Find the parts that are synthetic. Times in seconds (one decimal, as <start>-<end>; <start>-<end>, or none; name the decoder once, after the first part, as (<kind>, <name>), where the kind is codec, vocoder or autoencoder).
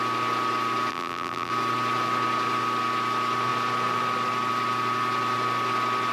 0.9-1.5 (vocoder, BigVGAN v2)